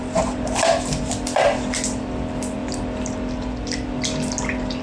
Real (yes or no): no